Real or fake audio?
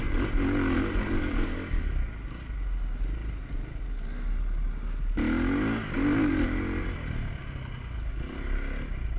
real